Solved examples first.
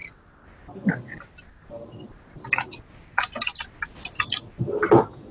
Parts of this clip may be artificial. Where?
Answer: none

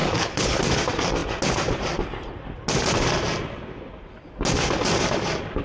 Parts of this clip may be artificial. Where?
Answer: 0.0-0.6 (codec, HILCodec)

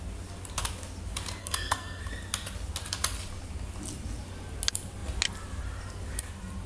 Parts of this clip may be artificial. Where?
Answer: 1.4-2.0 (codec, SNAC)

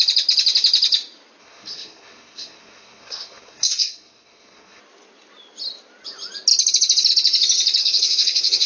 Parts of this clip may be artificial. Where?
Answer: 1.4-4.8 (codec, SNAC); 7.8-8.7

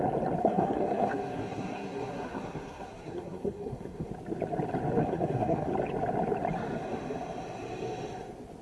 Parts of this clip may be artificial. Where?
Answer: 0.4-4.1 (codec, SNAC); 5.0-5.7

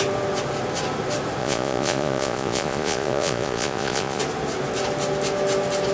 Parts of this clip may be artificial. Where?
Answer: 1.4-4.2 (vocoder, Vocos)